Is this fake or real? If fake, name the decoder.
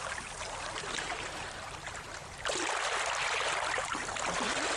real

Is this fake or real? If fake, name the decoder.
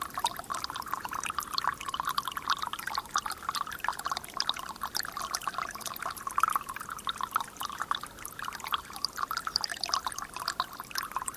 real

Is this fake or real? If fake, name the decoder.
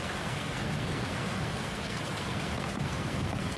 fake, codec, SNAC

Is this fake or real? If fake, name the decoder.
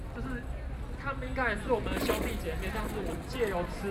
real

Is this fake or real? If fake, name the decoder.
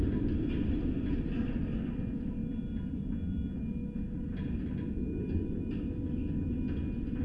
real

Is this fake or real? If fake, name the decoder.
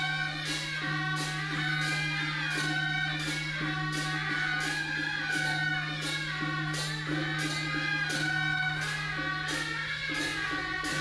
real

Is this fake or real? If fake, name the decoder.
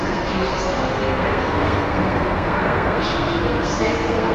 fake, codec, SNAC